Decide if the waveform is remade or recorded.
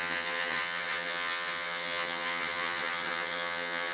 remade